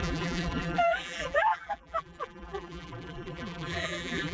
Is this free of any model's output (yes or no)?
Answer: no